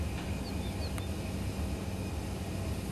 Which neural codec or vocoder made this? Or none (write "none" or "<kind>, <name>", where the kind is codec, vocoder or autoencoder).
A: none